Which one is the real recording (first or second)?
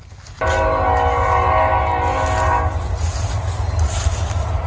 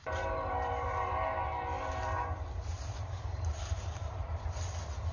first